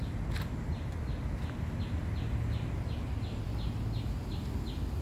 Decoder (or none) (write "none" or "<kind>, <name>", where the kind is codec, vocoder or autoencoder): none